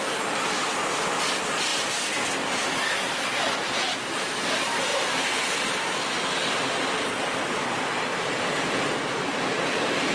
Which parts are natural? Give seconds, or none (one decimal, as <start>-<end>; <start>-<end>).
0.0-10.1